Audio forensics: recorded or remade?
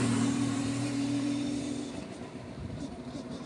remade